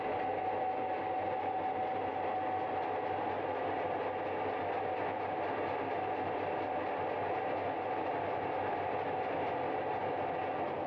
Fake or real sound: real